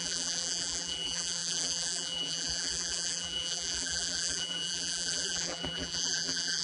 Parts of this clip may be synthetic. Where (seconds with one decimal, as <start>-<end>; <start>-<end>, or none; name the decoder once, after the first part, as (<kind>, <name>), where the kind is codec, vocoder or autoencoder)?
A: 0.0-6.6 (vocoder, BigVGAN v2)